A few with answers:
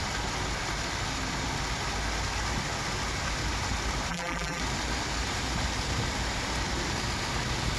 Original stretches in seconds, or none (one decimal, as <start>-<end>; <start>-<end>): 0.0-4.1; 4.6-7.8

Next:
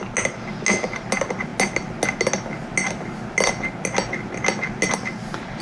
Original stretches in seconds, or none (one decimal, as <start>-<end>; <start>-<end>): 0.0-5.6

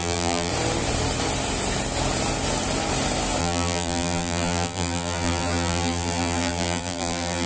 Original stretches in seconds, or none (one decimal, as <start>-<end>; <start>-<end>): 0.5-3.4